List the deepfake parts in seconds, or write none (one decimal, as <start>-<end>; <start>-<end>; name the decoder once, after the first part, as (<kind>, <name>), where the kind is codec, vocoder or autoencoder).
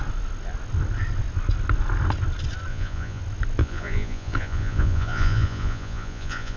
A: 2.7-3.2 (vocoder, Vocos); 3.6-6.6